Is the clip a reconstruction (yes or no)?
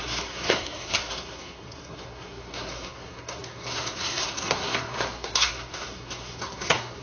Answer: yes